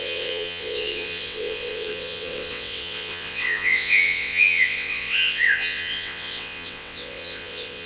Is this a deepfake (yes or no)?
yes